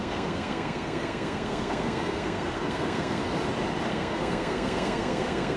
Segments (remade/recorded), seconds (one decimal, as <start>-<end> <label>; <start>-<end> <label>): 0.0-3.2 remade; 3.2-3.9 recorded; 3.9-5.6 remade